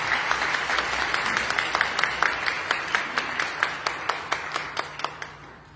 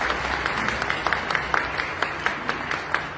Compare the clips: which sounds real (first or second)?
second